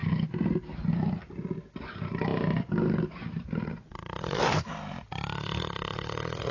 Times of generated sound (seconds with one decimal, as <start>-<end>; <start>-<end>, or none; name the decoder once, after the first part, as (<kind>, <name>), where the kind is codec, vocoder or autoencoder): none